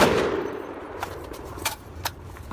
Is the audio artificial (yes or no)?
yes